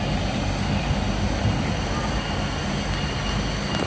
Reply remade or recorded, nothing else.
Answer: recorded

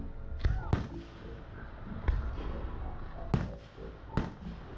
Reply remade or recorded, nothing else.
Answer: recorded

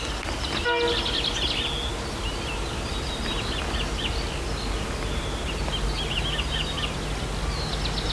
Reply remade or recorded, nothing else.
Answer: recorded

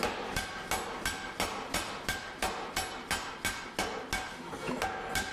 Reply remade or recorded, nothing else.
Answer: recorded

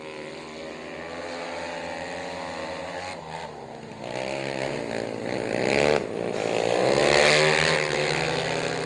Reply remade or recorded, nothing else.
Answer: recorded